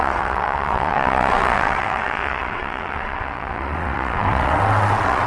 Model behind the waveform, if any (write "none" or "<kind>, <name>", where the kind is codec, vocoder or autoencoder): vocoder, WaveNeXt